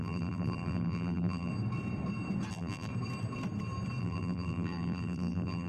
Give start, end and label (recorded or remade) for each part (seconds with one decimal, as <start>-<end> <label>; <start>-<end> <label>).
0.0-1.5 remade; 1.5-2.5 recorded; 2.5-2.9 remade; 2.9-4.0 recorded; 4.0-5.7 remade

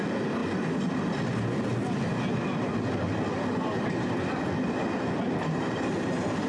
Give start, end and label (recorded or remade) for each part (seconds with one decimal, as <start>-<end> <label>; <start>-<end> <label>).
0.0-6.5 recorded

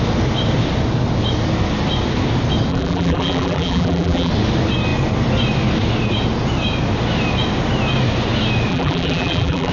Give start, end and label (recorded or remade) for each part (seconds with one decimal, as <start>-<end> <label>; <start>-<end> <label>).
0.0-2.7 recorded; 2.7-4.3 remade; 4.3-8.7 recorded; 8.7-9.7 remade

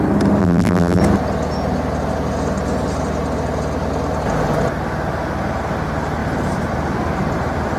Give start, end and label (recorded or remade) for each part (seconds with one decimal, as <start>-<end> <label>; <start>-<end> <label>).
0.0-0.4 recorded; 0.4-1.0 remade; 1.0-7.8 recorded